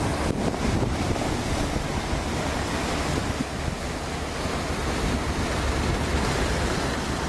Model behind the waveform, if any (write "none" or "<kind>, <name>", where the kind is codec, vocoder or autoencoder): none